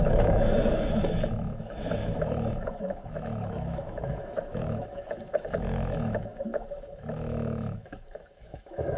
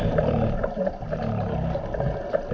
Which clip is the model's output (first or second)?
first